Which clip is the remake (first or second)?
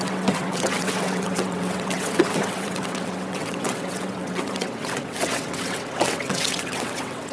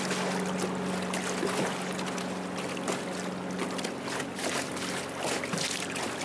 first